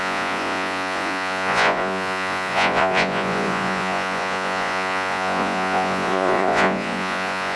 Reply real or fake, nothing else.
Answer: fake